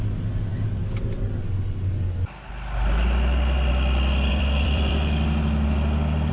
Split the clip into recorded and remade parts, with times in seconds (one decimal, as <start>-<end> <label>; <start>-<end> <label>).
0.0-4.3 recorded; 4.3-6.3 remade